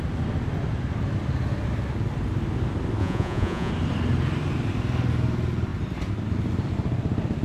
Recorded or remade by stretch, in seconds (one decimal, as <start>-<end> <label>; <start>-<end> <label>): 0.0-3.0 recorded; 3.0-3.7 remade; 3.7-7.4 recorded